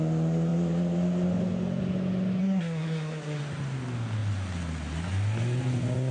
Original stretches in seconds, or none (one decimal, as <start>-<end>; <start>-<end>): 0.0-2.4; 3.4-6.1